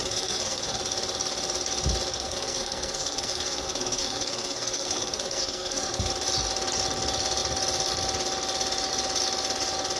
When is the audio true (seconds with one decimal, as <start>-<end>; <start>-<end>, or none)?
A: 0.8-2.1; 6.1-10.0